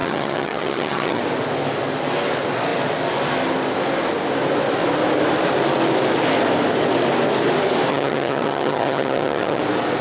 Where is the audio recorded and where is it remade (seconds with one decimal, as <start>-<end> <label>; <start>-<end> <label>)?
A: 0.0-1.2 remade; 1.2-7.9 recorded; 7.9-9.6 remade; 9.6-10.0 recorded